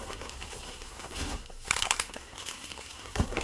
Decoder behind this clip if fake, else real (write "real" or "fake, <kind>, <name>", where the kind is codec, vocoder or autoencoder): fake, codec, SNAC